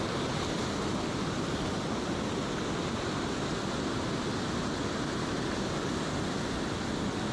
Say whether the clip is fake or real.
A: real